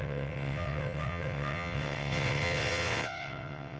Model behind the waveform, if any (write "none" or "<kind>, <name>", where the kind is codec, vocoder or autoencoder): vocoder, WaveNeXt